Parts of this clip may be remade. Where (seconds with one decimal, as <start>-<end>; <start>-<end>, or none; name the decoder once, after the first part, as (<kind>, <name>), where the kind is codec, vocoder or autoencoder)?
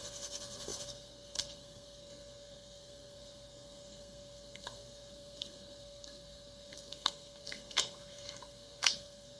0.0-9.4 (codec, SNAC)